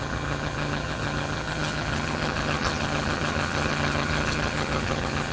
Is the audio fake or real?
fake